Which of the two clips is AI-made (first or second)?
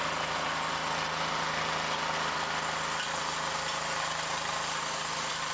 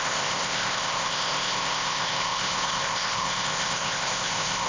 second